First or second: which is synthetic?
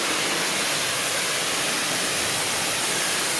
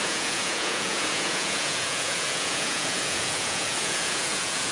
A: second